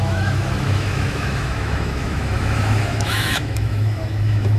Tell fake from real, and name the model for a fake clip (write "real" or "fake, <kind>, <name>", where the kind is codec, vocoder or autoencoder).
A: fake, autoencoder, DAC-VAE